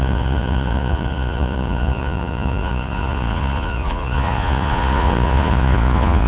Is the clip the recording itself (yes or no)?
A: no